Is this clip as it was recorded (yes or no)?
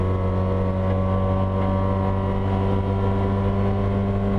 yes